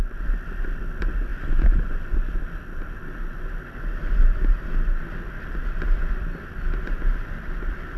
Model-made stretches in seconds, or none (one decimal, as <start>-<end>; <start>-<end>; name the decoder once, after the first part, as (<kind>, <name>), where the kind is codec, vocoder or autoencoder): none